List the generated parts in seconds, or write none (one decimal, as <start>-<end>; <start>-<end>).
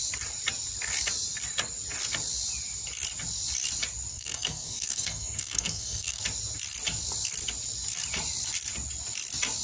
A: 4.1-6.2